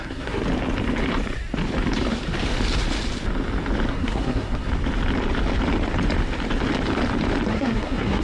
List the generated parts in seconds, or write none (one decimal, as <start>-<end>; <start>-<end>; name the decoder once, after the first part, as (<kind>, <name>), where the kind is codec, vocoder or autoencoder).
0.0-0.4 (codec, SNAC); 3.9-4.7; 7.5-8.2